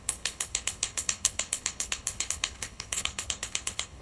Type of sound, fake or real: fake